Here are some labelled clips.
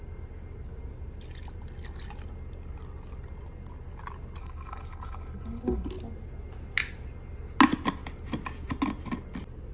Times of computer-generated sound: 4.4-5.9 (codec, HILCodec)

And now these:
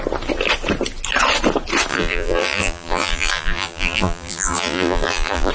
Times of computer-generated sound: 1.9-5.5 (vocoder, BigVGAN v2)

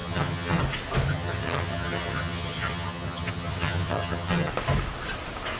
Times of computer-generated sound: 0.0-0.6 (vocoder, HiFi-GAN); 1.1-4.5

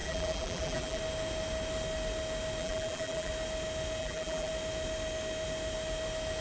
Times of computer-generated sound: 0.0-1.0 (vocoder, BigVGAN v2); 2.6-3.3; 4.0-4.5